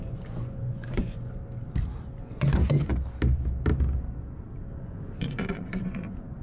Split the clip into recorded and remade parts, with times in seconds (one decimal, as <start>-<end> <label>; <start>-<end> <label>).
0.0-1.4 remade; 1.4-2.2 recorded; 2.2-2.9 remade; 2.9-4.8 recorded; 4.8-6.4 remade